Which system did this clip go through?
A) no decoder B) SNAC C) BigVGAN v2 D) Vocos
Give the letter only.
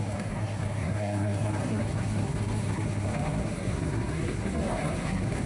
B